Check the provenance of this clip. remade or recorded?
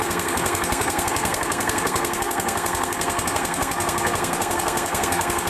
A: remade